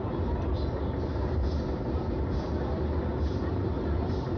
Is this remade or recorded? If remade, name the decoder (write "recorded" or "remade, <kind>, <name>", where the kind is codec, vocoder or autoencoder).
recorded